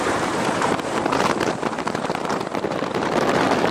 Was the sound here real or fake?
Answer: fake